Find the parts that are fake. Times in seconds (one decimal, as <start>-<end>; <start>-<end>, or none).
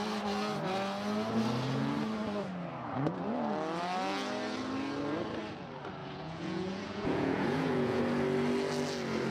6.0-8.0